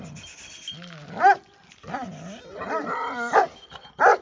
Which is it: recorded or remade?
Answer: recorded